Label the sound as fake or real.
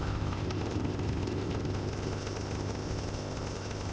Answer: fake